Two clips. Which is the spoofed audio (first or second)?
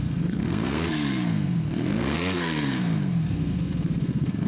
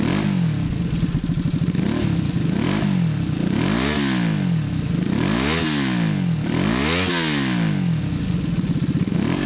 first